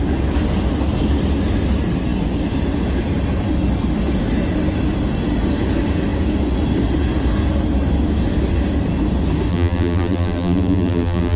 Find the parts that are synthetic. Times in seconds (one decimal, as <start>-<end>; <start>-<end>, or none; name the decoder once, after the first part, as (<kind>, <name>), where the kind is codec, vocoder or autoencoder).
9.5-11.4 (vocoder, BigVGAN v2)